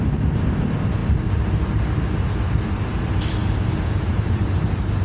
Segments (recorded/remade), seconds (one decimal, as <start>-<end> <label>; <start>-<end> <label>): 0.0-1.0 remade; 1.0-2.5 recorded; 2.5-5.0 remade